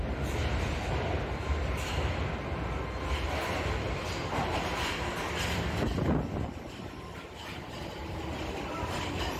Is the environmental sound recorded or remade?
recorded